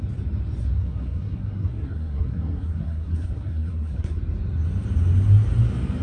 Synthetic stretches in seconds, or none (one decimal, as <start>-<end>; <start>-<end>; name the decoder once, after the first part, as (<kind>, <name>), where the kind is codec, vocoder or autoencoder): 0.6-4.2 (codec, SNAC)